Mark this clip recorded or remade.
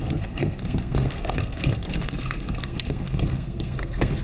remade